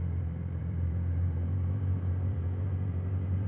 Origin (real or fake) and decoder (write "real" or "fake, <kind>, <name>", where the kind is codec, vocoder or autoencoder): fake, vocoder, BigVGAN v2